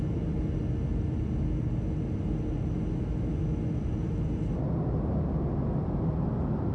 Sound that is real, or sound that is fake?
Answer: real